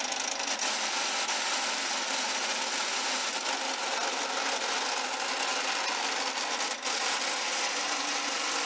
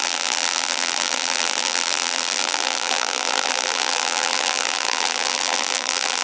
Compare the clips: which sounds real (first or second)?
first